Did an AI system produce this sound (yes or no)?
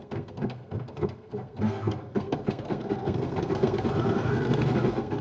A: yes